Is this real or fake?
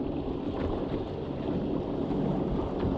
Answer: real